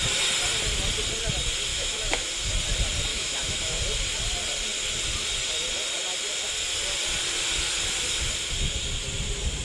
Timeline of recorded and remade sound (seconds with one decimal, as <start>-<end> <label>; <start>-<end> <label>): 0.0-1.7 recorded; 1.7-2.3 remade; 2.3-3.1 recorded; 3.1-3.8 remade; 3.8-9.6 recorded